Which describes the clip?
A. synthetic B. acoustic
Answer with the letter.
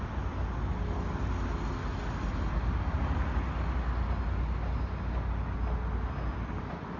B